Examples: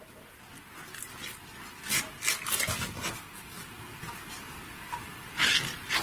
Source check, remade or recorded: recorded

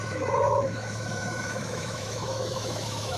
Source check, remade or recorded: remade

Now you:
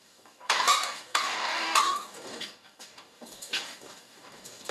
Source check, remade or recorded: remade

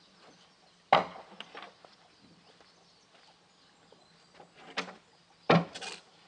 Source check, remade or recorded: recorded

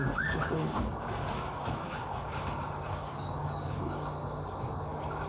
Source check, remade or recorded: remade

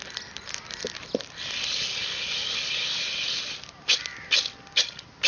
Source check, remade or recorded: recorded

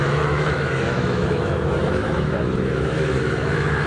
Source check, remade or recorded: remade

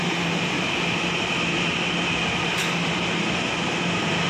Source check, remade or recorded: recorded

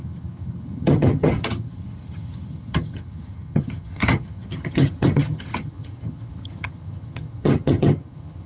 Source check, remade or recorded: remade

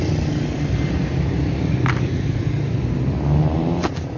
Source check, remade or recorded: recorded